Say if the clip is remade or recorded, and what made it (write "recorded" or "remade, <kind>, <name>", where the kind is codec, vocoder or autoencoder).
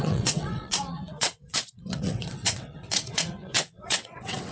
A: remade, vocoder, WaveNeXt